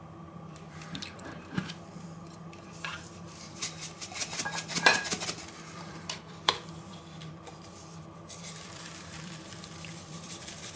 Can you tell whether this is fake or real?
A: fake